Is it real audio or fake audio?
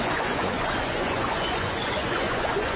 fake